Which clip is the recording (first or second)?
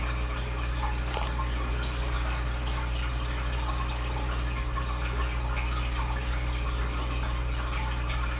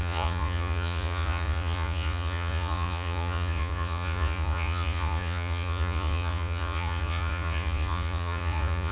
first